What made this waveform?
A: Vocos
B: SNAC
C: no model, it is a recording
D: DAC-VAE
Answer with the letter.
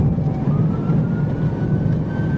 C